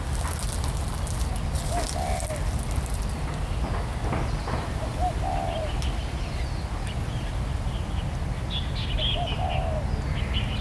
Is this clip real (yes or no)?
yes